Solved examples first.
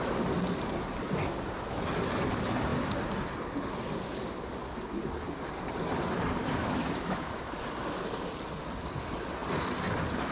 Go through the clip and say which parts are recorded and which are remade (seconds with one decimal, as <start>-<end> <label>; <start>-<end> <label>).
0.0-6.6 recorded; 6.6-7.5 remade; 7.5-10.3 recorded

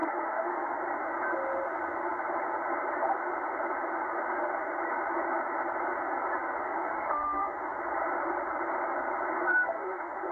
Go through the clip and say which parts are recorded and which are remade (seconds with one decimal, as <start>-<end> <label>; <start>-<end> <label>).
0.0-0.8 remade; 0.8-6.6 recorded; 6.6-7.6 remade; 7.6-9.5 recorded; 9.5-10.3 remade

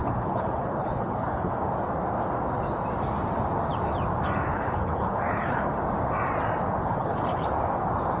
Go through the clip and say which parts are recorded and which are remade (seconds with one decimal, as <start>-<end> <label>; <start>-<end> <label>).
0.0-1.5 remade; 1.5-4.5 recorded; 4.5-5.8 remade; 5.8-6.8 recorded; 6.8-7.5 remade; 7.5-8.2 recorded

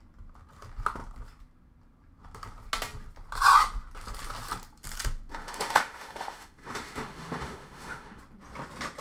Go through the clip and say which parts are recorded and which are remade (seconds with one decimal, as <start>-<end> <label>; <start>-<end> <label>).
0.0-5.3 recorded; 5.3-8.2 remade; 8.2-9.0 recorded

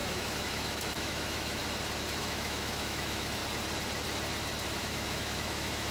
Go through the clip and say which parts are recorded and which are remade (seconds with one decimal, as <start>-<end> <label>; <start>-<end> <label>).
0.0-1.6 remade; 1.6-2.2 recorded; 2.2-3.4 remade; 3.4-4.8 recorded; 4.8-5.9 remade